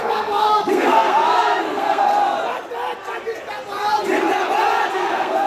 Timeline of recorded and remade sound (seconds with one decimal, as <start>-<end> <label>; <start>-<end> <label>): 0.0-2.1 remade; 2.1-4.9 recorded; 4.9-5.5 remade